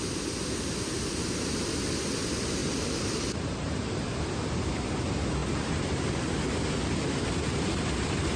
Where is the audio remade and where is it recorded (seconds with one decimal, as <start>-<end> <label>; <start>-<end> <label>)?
0.0-2.6 recorded; 2.6-4.2 remade; 4.2-5.4 recorded; 5.4-6.2 remade; 6.2-8.4 recorded